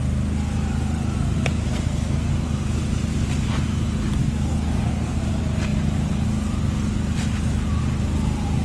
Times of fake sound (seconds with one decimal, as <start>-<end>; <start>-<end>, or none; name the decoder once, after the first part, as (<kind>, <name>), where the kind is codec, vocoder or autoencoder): 1.7-2.3 (codec, SNAC); 4.2-5.2